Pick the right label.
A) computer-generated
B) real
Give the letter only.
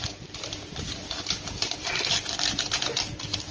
B